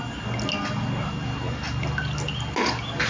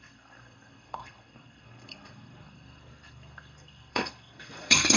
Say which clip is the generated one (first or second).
second